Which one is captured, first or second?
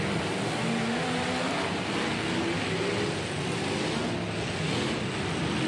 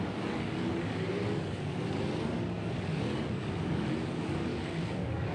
first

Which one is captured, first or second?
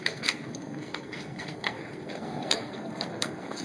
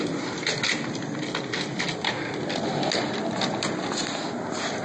second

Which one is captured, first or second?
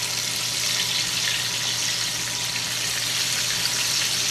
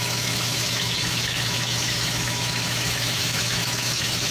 first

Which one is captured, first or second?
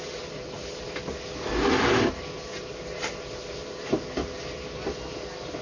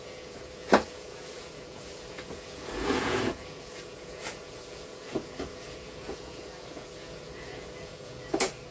first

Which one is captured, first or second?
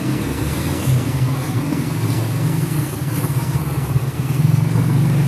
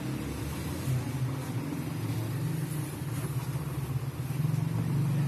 second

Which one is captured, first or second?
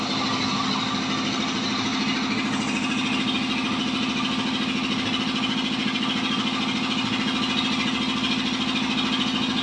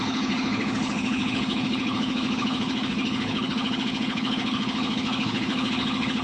first